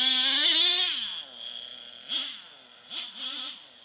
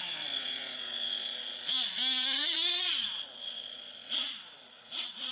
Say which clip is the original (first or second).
first